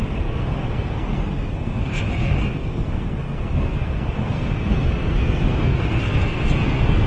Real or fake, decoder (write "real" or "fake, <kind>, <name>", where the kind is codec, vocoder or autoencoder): fake, codec, SNAC